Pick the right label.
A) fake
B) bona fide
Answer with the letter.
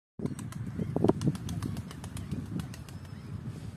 B